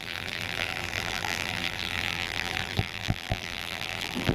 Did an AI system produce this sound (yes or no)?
yes